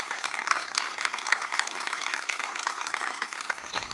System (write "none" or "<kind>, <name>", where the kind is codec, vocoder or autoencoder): codec, SNAC